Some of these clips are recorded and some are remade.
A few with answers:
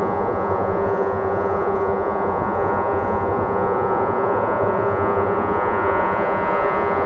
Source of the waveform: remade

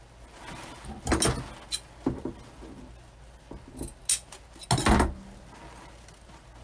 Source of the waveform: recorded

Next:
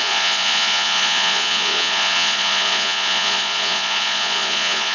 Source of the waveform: remade